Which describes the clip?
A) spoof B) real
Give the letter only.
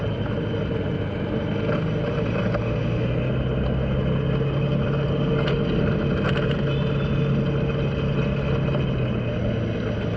B